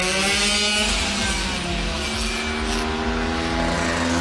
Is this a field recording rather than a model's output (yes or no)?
yes